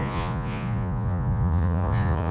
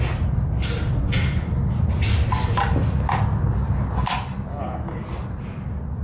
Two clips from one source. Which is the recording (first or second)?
second